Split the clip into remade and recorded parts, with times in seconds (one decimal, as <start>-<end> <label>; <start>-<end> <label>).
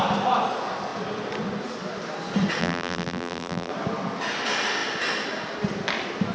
0.0-2.6 recorded; 2.6-3.7 remade; 3.7-6.3 recorded